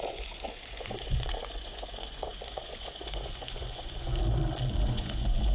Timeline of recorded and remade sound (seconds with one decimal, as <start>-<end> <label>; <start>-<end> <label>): 0.0-4.1 remade; 4.1-4.8 recorded; 4.8-5.5 remade